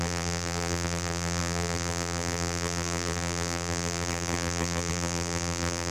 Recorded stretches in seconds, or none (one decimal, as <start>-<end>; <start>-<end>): none